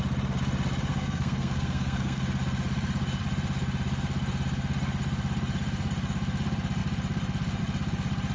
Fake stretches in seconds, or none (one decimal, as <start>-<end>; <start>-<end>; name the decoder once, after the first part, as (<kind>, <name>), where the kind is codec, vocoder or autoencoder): 0.9-2.2 (codec, SNAC)